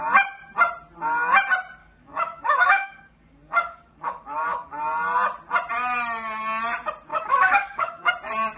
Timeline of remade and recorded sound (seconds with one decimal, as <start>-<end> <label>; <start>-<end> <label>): 0.0-1.8 recorded; 1.8-4.8 remade; 4.8-7.1 recorded; 7.1-8.1 remade; 8.1-8.6 recorded